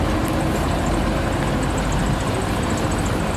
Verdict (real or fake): real